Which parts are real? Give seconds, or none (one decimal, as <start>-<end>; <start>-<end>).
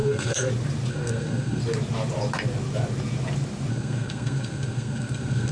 0.5-0.9; 1.6-3.7